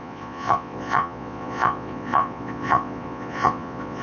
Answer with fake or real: fake